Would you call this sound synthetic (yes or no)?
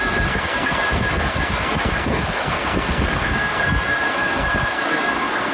yes